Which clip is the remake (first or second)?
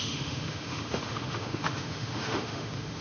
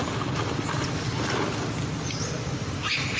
first